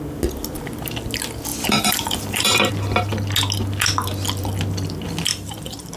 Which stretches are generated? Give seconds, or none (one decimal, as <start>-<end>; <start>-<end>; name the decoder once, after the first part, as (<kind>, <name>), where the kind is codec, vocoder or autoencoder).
1.5-2.7 (vocoder, BigVGAN v2); 5.3-6.0